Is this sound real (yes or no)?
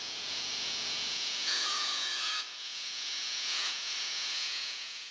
no